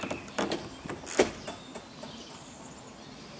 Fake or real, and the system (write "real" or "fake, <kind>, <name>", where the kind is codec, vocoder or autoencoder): real